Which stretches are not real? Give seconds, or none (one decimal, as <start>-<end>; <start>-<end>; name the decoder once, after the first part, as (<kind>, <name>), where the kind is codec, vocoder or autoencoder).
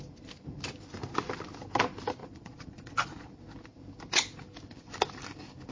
2.2-3.3 (vocoder, Vocos)